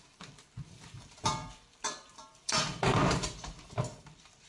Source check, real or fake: fake